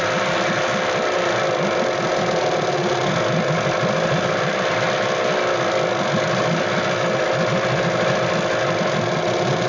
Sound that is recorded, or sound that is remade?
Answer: recorded